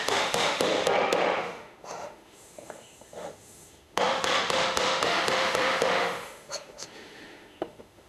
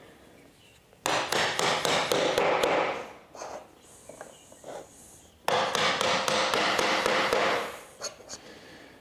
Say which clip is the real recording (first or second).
second